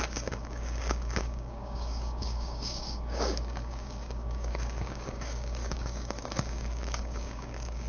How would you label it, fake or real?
fake